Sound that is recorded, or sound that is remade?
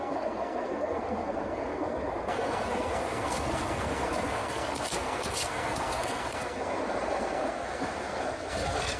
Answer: remade